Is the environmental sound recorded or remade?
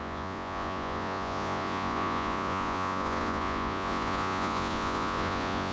remade